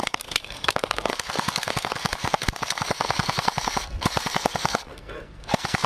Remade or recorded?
remade